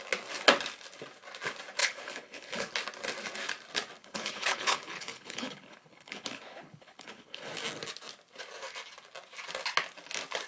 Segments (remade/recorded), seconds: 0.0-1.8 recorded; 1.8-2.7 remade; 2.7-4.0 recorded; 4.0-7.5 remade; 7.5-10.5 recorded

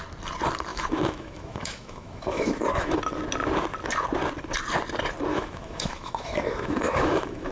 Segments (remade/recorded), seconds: 0.0-0.7 recorded; 0.7-2.9 remade; 2.9-5.3 recorded; 5.3-7.5 remade